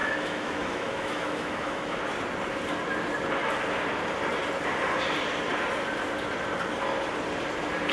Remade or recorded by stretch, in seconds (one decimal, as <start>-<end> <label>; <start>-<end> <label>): 0.0-2.0 remade; 2.0-7.9 recorded